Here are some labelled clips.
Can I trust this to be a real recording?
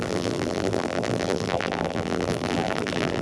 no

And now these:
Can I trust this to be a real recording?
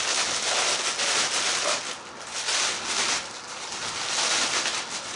yes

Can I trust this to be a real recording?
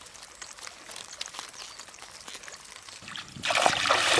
yes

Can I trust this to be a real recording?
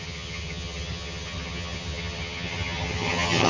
no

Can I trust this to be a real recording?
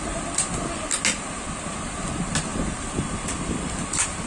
yes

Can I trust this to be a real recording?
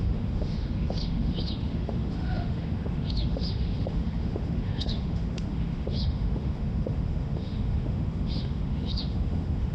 no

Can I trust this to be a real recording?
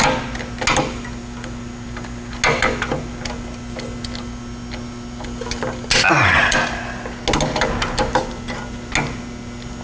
yes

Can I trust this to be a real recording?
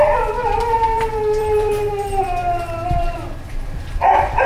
no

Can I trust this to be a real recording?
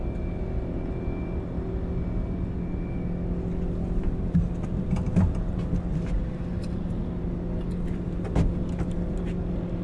yes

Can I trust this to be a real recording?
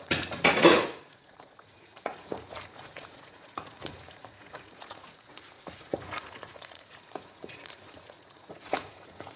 no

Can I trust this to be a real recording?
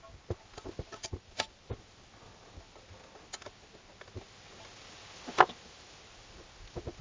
yes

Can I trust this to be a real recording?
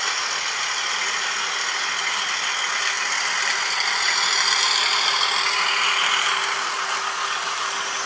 yes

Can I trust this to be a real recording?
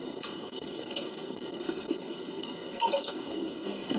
no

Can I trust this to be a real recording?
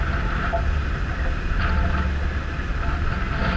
yes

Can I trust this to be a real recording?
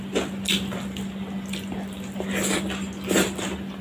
yes